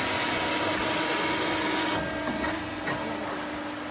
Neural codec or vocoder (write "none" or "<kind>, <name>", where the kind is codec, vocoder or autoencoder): none